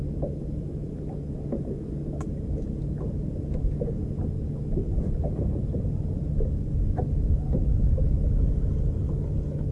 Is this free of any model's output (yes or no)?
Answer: yes